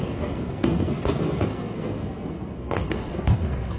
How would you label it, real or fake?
fake